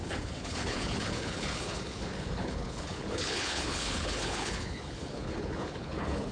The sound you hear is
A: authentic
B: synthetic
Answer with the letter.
B